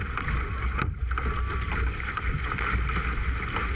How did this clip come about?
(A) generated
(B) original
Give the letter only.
B